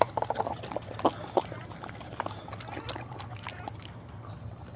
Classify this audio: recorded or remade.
recorded